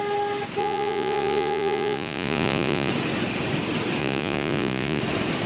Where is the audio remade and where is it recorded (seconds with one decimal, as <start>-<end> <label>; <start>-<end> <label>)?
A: 0.0-0.6 recorded; 0.6-2.9 remade; 2.9-4.0 recorded; 4.0-5.0 remade; 5.0-5.5 recorded